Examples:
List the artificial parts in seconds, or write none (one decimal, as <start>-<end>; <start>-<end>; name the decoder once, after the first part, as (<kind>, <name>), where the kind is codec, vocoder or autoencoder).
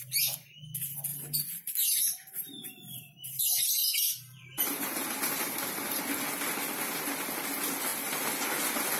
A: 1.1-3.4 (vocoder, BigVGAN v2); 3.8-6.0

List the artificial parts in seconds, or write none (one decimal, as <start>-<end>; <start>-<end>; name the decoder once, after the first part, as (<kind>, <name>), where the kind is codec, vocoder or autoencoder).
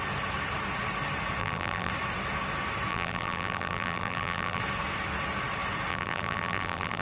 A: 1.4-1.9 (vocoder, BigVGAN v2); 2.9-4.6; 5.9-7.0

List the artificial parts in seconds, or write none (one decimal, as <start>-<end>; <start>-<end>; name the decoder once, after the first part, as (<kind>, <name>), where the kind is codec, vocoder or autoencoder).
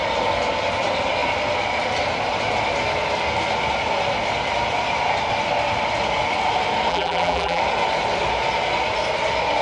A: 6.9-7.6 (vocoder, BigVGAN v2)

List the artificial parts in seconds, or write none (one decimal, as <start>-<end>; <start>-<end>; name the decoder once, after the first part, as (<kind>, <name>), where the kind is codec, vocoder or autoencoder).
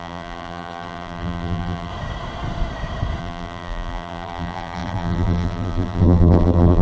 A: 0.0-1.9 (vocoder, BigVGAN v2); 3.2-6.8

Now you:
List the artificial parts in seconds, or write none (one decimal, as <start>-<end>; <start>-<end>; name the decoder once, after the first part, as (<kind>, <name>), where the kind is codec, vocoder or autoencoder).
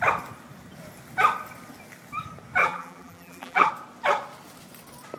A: 2.6-3.7 (vocoder, BigVGAN v2)